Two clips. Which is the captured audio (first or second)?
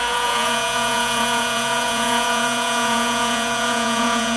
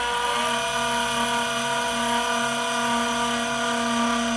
second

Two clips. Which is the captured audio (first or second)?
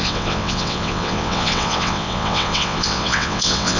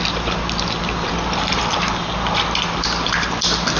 second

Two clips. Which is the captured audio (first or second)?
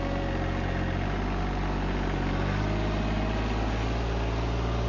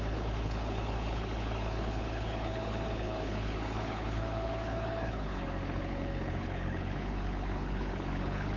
first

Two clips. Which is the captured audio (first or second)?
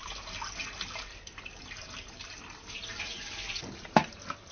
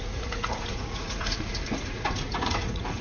first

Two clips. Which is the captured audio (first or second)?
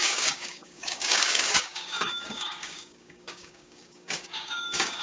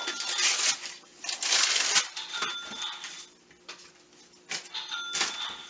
second